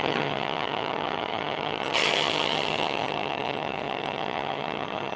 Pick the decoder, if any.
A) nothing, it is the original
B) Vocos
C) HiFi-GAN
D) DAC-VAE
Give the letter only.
C